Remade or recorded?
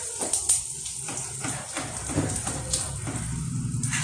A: recorded